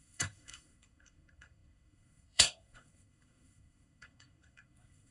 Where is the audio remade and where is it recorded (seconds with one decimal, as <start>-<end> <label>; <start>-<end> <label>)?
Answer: 0.0-5.1 remade